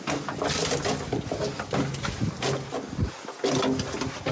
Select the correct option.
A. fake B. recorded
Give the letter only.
B